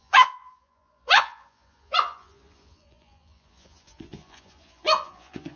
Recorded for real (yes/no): no